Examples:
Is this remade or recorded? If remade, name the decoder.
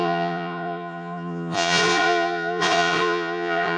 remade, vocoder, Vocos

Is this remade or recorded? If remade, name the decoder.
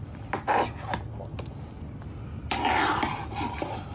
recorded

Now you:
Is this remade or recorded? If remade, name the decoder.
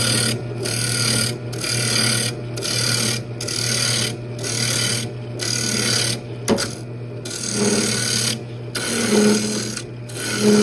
recorded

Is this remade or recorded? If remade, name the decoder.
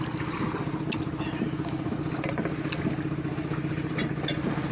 recorded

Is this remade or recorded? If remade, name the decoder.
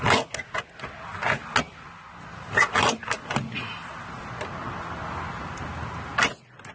recorded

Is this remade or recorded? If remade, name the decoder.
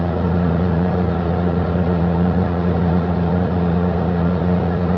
remade, vocoder, Vocos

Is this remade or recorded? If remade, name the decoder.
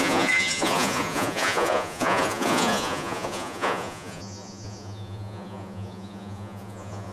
remade, vocoder, Vocos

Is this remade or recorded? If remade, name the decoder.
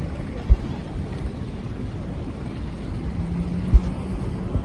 recorded